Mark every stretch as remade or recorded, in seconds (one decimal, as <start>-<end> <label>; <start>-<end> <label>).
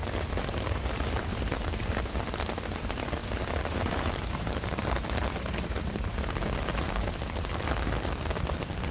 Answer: 0.0-2.0 remade; 2.0-3.2 recorded; 3.2-7.1 remade; 7.1-8.9 recorded